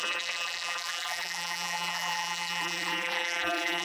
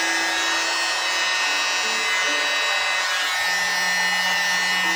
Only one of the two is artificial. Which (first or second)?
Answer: first